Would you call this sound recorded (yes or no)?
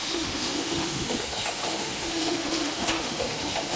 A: no